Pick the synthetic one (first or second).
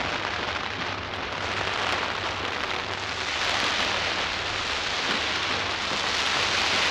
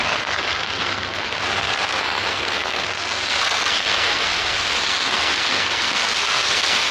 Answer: second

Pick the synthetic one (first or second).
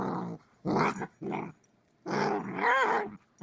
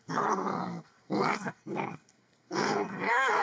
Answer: second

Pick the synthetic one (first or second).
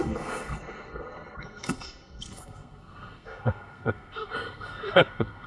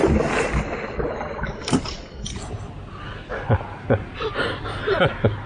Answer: first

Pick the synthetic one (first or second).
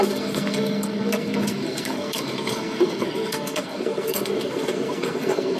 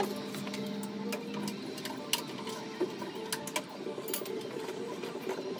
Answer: first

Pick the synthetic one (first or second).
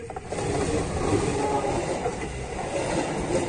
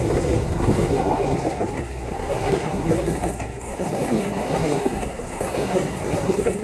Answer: second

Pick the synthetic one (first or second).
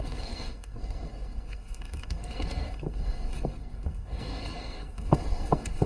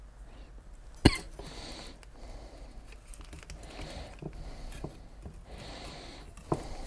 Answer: first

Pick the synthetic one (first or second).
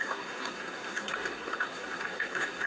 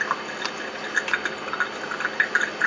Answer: first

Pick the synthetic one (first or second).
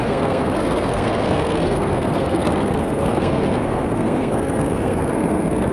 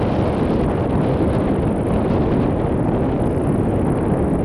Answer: first